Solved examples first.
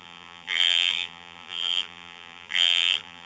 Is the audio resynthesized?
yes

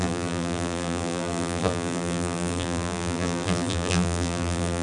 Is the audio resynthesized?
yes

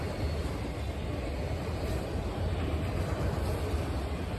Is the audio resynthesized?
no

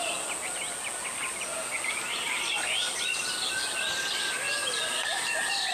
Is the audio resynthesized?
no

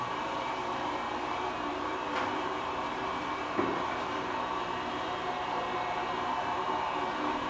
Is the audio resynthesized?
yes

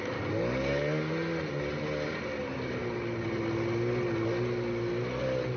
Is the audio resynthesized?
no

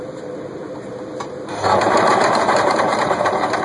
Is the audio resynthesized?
yes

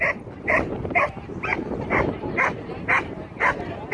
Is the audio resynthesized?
yes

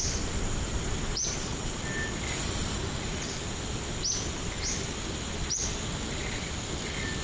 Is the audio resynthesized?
no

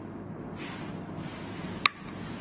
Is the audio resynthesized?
no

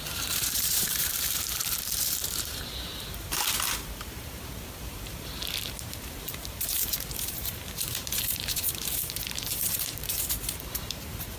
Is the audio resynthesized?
yes